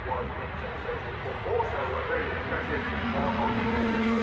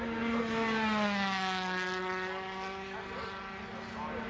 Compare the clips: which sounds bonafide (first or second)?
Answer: second